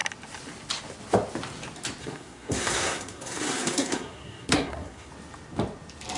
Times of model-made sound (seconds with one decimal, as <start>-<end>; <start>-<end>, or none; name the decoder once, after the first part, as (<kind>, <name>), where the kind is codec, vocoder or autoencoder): 2.0-5.1 (codec, SNAC)